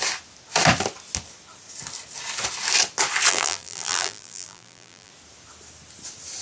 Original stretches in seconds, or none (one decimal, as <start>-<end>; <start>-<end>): 0.0-3.3; 5.1-6.4